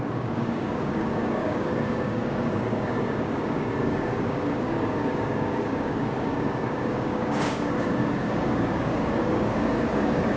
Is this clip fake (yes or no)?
yes